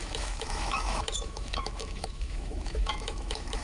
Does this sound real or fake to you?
fake